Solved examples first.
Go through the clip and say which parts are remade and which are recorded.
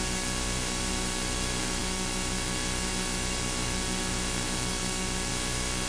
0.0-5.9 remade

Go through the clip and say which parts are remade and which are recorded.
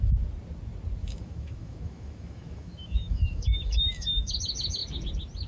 0.0-1.0 recorded; 1.0-4.3 remade; 4.3-5.5 recorded